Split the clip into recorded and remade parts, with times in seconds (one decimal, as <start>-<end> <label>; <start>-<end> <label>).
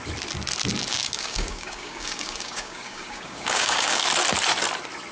0.0-0.9 recorded; 0.9-4.0 remade; 4.0-5.1 recorded